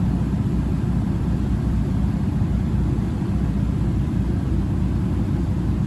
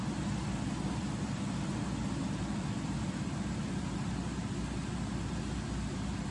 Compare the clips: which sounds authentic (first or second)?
second